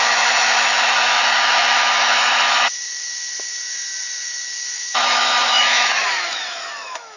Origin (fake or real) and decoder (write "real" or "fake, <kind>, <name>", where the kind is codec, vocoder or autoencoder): fake, autoencoder, DAC-VAE